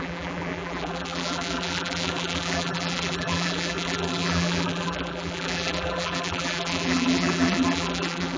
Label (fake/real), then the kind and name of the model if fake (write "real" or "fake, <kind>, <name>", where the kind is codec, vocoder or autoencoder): fake, vocoder, BigVGAN v2